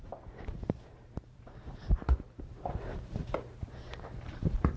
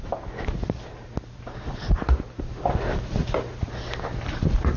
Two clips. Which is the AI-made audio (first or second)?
first